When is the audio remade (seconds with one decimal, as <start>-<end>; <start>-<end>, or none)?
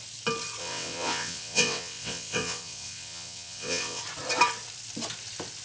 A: 0.6-4.0